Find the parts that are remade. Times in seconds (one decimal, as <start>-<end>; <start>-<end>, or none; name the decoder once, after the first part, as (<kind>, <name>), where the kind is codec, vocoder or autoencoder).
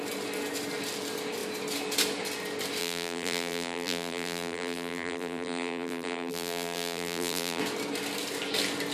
2.8-7.6 (vocoder, BigVGAN v2)